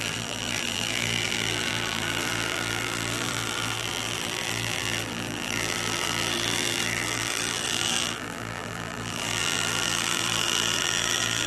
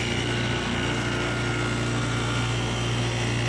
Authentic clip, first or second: second